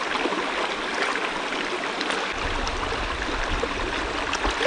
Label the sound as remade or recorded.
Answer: recorded